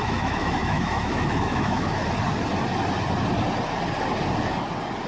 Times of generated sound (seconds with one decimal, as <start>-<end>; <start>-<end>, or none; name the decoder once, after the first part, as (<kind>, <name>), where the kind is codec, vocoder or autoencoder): 0.0-2.0 (autoencoder, DAC-VAE)